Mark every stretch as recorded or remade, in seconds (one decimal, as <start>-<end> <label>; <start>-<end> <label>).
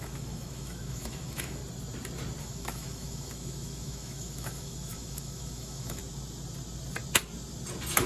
0.0-1.6 remade; 1.6-2.4 recorded; 2.4-6.0 remade; 6.0-8.1 recorded